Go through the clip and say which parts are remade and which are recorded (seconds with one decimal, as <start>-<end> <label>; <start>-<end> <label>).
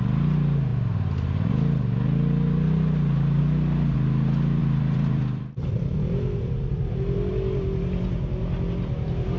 0.0-4.6 recorded; 4.6-7.3 remade; 7.3-9.4 recorded